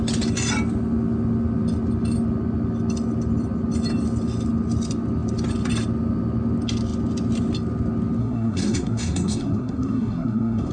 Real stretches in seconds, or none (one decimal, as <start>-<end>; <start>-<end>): 0.0-8.2